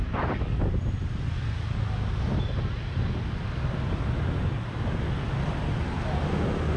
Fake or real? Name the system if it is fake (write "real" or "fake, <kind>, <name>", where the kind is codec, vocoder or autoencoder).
real